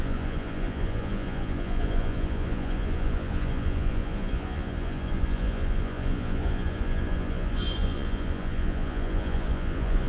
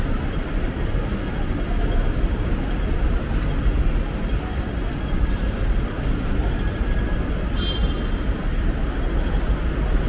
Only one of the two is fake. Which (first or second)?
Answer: first